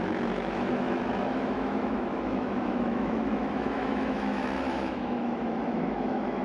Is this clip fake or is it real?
fake